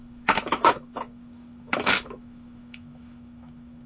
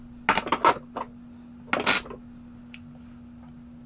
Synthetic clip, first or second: first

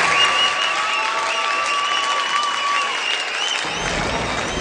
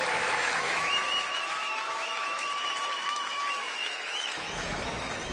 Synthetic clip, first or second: second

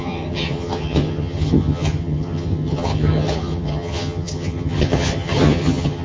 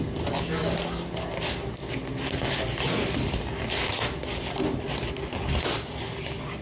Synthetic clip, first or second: first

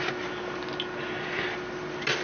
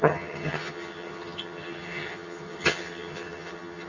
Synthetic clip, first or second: second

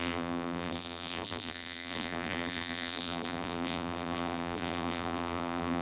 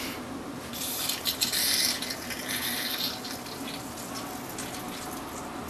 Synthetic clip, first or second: first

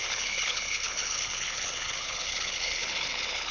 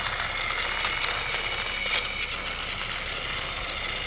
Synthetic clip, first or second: first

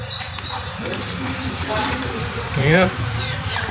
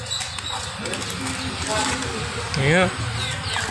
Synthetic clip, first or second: first